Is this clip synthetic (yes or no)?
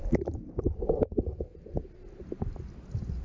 no